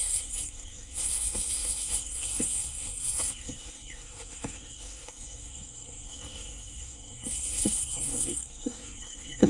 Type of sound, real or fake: fake